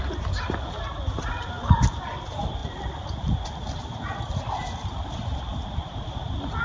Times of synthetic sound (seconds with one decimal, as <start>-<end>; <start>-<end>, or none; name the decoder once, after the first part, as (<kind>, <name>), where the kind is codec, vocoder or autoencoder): 2.6-6.6 (vocoder, BigVGAN v2)